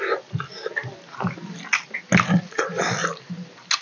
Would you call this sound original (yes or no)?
yes